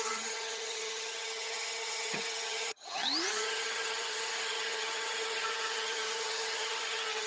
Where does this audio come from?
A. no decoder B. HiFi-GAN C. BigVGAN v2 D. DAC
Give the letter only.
B